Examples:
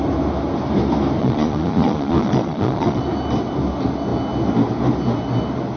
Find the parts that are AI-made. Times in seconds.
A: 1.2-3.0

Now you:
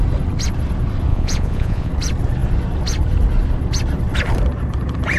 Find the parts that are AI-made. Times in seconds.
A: 1.1-1.9

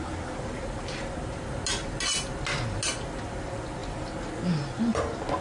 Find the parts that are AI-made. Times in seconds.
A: none

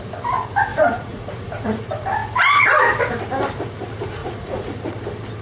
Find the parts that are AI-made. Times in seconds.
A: 0.7-1.8; 4.2-4.8

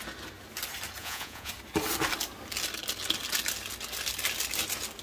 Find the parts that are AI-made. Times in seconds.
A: 1.0-1.5

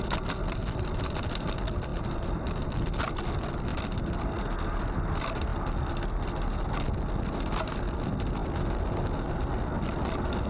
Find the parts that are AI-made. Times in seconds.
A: none